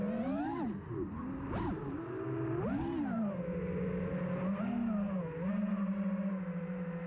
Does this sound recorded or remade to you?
recorded